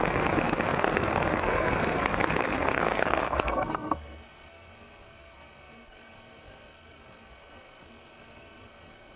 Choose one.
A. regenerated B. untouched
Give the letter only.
A